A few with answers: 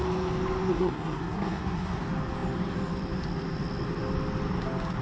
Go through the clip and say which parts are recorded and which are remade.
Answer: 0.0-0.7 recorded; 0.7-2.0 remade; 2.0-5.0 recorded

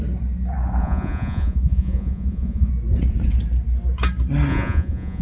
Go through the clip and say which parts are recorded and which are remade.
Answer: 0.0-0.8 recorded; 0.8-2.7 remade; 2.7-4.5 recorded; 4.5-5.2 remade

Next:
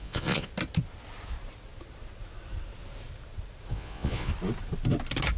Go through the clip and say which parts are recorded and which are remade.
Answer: 0.0-0.5 remade; 0.5-3.7 recorded; 3.7-4.3 remade; 4.3-5.4 recorded

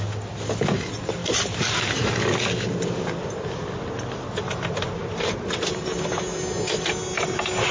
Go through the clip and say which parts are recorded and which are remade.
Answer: 0.0-7.7 recorded

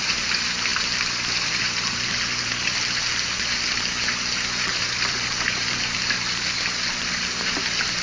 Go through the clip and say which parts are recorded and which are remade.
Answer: 0.0-8.0 recorded